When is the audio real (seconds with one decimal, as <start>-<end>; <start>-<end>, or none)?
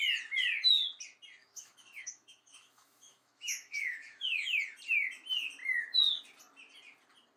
0.0-1.4; 4.6-7.4